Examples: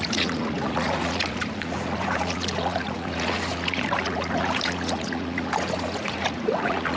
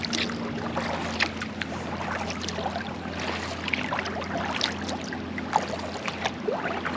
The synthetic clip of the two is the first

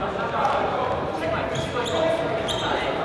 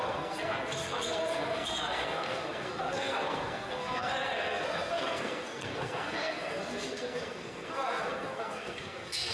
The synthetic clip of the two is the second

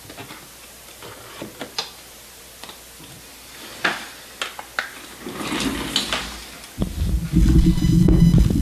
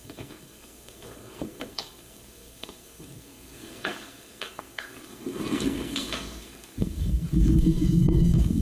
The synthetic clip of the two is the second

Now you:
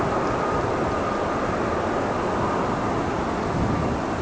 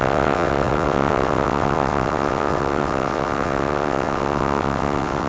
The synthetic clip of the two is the second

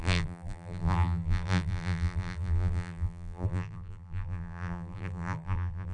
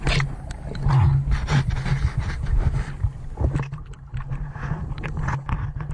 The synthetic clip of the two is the first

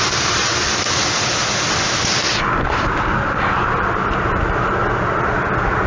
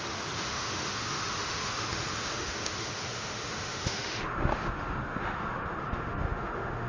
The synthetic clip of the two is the second